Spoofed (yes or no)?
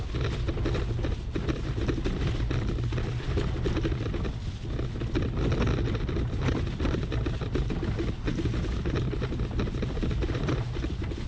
no